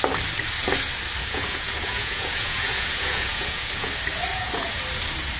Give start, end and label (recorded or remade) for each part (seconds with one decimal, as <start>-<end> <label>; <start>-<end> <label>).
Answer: 0.0-1.2 recorded; 1.2-3.9 remade; 3.9-4.3 recorded; 4.3-4.8 remade; 4.8-5.4 recorded